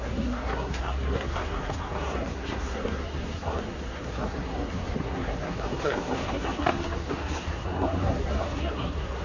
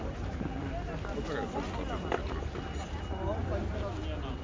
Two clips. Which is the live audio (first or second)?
second